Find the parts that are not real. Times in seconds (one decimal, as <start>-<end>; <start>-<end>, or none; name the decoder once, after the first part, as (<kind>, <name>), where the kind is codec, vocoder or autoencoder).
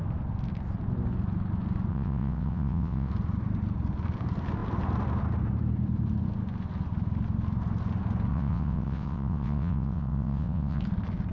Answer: 1.9-3.1 (vocoder, WaveNeXt); 8.3-10.8